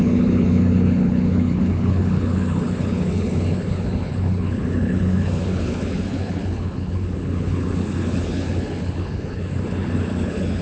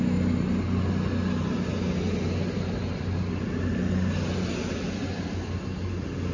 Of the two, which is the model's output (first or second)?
first